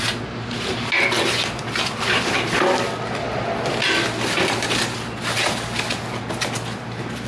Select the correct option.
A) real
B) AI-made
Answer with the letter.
A